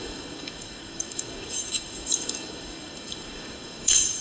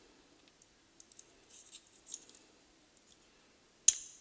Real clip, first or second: second